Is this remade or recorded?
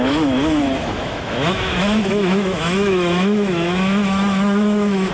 remade